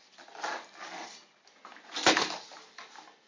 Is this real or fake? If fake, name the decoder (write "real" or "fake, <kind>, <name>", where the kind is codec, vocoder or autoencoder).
real